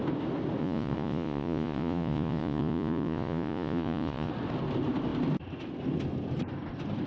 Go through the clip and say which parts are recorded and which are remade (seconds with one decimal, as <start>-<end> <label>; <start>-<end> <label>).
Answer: 0.0-0.6 recorded; 0.6-4.3 remade; 4.3-7.1 recorded